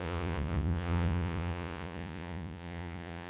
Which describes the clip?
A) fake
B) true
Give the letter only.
A